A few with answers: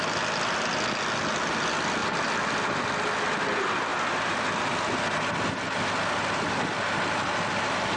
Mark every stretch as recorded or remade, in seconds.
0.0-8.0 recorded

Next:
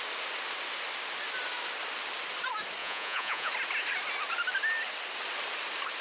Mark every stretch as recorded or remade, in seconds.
0.0-2.8 recorded; 2.8-3.5 remade; 3.5-6.0 recorded

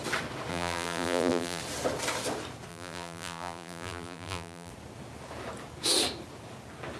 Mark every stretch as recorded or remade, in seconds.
0.0-0.5 recorded; 0.5-1.6 remade; 1.6-2.7 recorded; 2.7-4.7 remade; 4.7-7.0 recorded

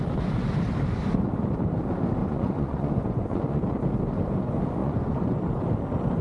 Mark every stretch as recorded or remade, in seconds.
0.0-2.2 recorded; 2.2-3.6 remade; 3.6-4.8 recorded; 4.8-5.4 remade; 5.4-6.2 recorded

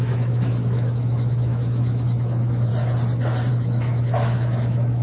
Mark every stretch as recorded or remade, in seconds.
0.0-2.7 remade; 2.7-3.5 recorded; 3.5-5.0 remade